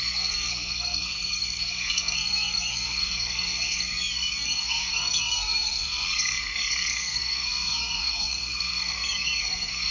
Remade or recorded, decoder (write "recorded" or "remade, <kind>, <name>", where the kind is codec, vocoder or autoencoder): remade, codec, SNAC